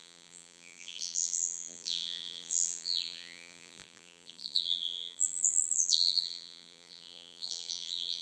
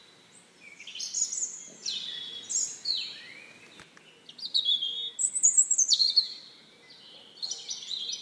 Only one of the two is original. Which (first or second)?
second